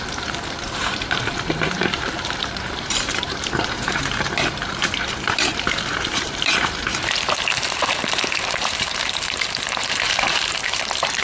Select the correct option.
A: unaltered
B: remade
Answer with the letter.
B